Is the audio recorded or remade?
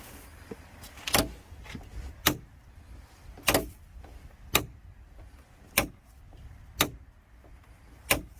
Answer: recorded